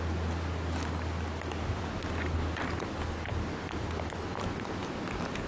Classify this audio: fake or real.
real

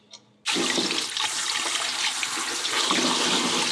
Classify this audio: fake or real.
real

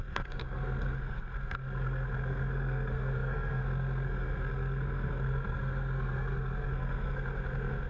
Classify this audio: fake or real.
fake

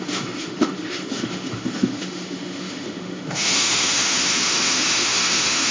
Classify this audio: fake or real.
fake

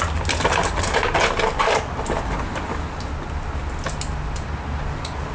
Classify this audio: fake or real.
real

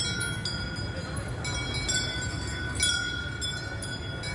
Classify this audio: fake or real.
real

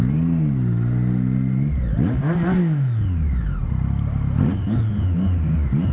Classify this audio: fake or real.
real